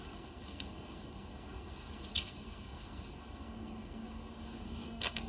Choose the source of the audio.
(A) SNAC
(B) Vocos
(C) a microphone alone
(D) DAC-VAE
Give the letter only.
A